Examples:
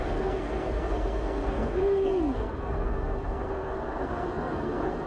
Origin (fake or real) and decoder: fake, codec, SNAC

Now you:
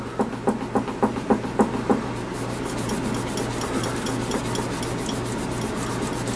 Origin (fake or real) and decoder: real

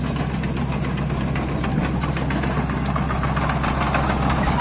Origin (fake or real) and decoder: real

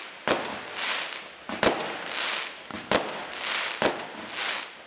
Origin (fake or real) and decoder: real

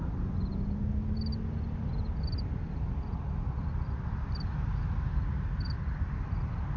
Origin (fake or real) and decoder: real